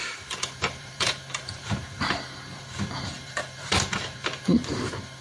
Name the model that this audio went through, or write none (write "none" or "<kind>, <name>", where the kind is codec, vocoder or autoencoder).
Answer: vocoder, BigVGAN v2